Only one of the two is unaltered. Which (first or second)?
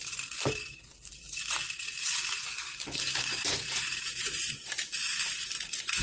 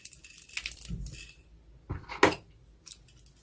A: second